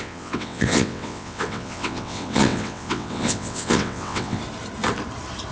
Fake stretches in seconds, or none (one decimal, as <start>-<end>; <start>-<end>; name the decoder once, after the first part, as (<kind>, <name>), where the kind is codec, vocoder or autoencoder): 0.0-4.4 (vocoder, WaveNeXt)